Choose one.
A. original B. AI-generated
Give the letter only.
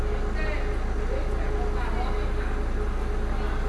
A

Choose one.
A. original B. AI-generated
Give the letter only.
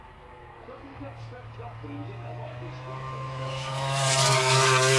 B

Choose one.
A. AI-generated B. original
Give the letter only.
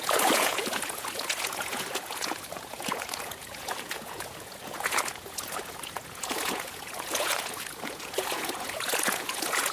A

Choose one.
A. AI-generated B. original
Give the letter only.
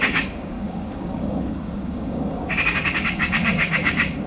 A